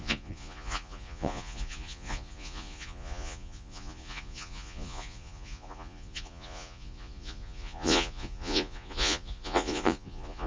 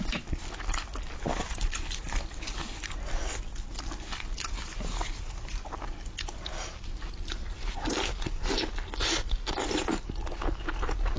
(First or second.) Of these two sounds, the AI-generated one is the first